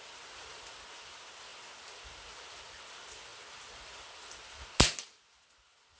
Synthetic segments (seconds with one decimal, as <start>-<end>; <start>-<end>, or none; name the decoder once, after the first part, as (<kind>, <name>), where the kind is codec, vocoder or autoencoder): none

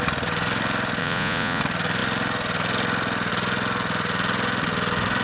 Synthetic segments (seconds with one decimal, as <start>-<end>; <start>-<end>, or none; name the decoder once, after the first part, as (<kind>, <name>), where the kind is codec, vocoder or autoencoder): 1.0-1.6 (vocoder, Vocos)

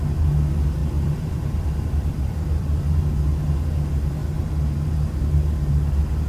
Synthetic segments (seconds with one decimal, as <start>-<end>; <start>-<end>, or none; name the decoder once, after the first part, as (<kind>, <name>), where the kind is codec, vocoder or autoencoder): 0.8-3.0 (vocoder, BigVGAN v2)

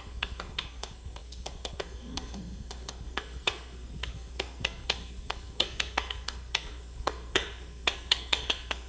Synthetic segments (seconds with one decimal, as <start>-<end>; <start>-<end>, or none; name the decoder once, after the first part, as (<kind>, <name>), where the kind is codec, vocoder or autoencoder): 0.0-8.9 (codec, SNAC)